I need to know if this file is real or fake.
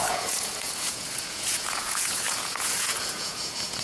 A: fake